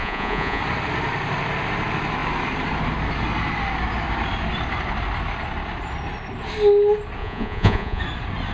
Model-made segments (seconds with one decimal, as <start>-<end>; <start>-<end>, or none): 0.0-0.6; 7.2-8.0